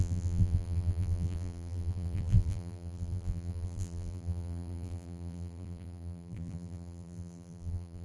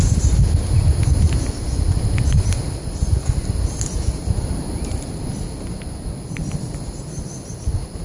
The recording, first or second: second